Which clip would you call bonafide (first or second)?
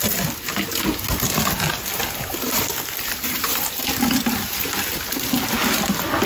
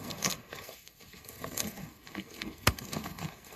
first